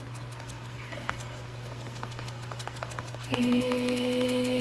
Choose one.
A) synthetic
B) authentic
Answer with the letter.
A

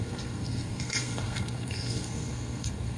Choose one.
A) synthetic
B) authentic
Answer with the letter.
A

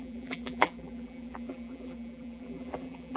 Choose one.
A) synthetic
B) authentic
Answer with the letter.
A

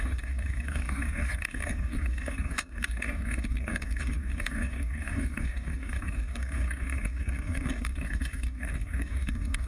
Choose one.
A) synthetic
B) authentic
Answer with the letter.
A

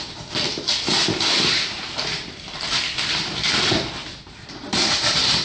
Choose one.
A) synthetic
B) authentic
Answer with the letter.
A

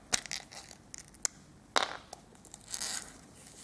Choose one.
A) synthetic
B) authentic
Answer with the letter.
B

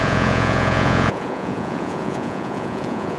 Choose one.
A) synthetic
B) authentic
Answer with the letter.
A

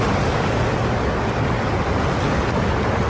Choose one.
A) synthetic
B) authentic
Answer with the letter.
B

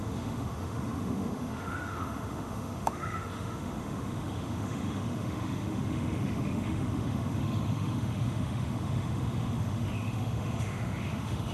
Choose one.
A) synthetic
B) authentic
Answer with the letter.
A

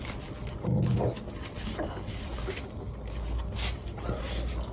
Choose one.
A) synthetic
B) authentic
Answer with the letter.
B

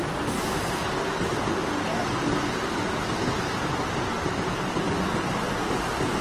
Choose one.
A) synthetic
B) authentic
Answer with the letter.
B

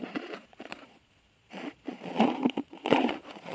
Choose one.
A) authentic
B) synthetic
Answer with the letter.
B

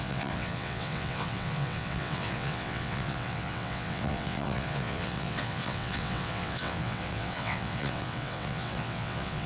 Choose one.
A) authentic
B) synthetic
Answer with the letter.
B